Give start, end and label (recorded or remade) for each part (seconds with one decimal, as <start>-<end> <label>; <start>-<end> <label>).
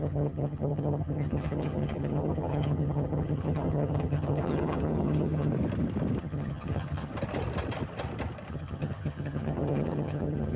0.0-5.5 remade; 5.5-6.2 recorded; 6.2-7.1 remade; 7.1-8.5 recorded; 8.5-10.6 remade